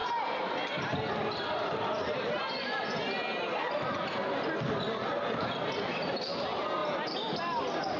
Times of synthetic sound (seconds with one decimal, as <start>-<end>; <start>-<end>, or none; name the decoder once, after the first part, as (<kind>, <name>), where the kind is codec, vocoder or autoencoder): none